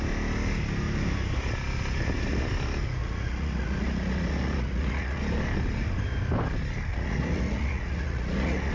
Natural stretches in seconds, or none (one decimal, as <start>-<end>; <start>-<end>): 0.0-3.0; 5.2-6.9